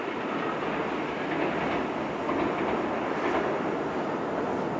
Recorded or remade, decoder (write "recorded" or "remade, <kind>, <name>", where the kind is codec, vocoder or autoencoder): recorded